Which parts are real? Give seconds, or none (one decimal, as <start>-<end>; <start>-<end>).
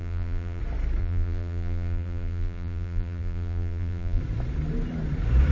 0.6-1.0; 4.2-5.5